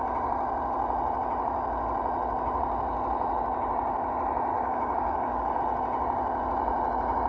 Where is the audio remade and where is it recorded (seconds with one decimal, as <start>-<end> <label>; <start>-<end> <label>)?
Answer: 0.0-4.5 recorded; 4.5-5.6 remade; 5.6-7.3 recorded